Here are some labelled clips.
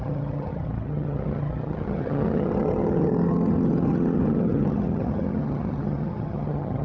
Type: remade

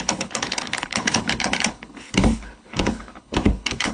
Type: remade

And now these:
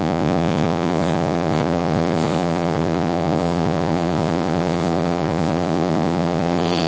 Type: remade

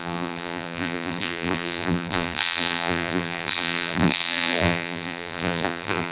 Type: remade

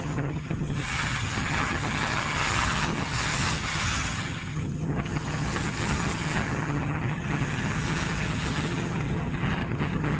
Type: remade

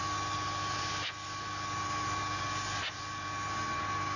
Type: recorded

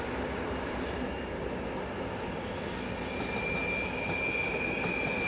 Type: recorded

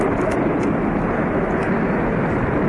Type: recorded